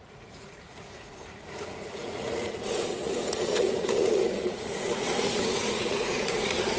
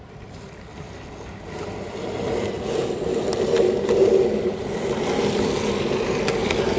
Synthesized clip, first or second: first